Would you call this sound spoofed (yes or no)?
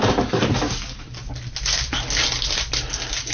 no